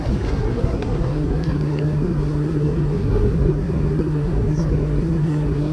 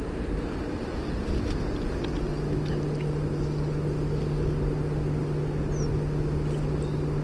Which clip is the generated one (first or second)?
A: first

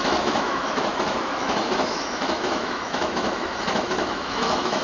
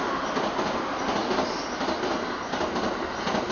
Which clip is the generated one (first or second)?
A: first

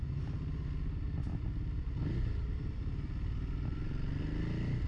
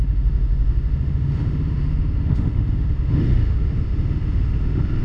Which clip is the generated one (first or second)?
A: second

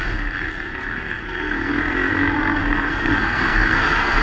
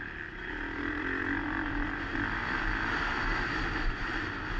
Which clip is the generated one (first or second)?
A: first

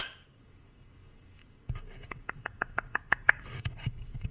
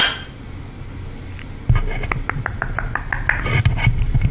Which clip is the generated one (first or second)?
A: first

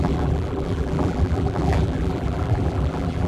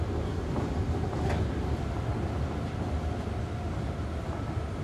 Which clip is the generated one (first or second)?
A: first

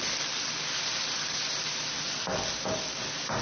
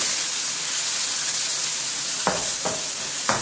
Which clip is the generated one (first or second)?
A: second